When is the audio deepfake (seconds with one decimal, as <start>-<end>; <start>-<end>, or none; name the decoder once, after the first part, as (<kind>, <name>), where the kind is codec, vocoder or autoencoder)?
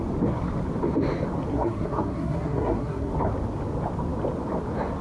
1.5-3.1 (codec, SNAC)